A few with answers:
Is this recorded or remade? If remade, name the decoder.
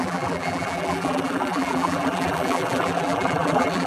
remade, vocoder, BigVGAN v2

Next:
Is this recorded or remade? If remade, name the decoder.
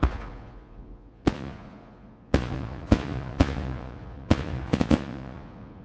remade, vocoder, Vocos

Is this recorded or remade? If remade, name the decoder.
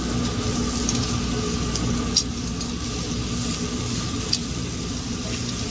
recorded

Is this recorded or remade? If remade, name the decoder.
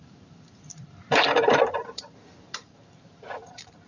remade, vocoder, BigVGAN v2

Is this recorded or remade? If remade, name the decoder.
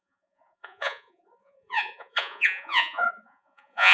remade, vocoder, Vocos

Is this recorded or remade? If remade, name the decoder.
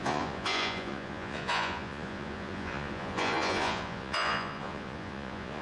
remade, vocoder, Vocos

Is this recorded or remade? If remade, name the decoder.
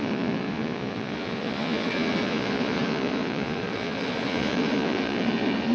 remade, vocoder, Vocos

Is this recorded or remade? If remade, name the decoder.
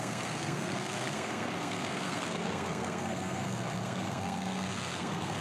remade, codec, SNAC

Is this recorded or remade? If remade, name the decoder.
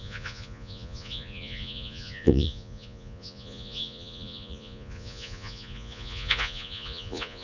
remade, vocoder, Vocos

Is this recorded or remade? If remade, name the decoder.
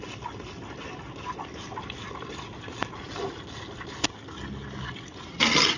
recorded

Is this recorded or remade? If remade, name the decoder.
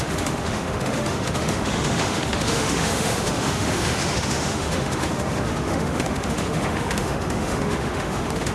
remade, autoencoder, DAC-VAE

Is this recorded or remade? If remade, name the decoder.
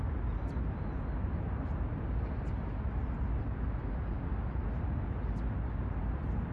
recorded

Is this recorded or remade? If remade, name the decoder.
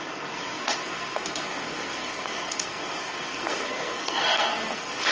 remade, codec, SNAC